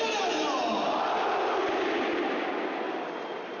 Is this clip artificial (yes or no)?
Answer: no